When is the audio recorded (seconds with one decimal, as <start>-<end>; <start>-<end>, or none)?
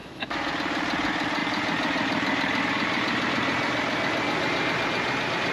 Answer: 0.5-5.5